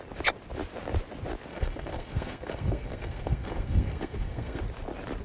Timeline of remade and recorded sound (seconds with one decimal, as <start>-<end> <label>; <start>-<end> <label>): 0.0-1.5 recorded; 1.5-4.6 remade; 4.6-5.2 recorded